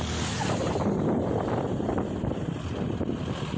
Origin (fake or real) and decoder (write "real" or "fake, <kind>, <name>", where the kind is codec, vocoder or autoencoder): real